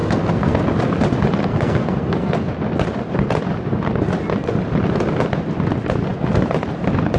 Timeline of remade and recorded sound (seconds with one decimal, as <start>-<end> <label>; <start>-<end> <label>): 0.0-0.6 remade; 0.6-1.4 recorded; 1.4-2.5 remade; 2.5-7.2 recorded

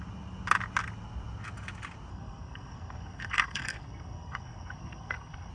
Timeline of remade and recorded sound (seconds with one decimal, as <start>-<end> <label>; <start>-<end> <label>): 0.0-2.1 recorded; 2.1-5.5 remade

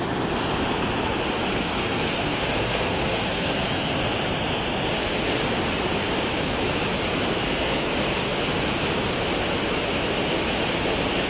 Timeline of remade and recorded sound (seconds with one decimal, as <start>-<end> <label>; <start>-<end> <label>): 0.0-1.5 recorded; 1.5-3.9 remade; 3.9-7.3 recorded; 7.3-7.9 remade; 7.9-11.3 recorded

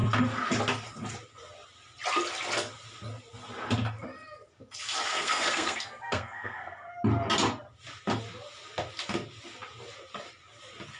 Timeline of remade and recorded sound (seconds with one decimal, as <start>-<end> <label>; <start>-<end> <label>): 0.0-5.1 recorded; 5.1-6.9 remade; 6.9-11.0 recorded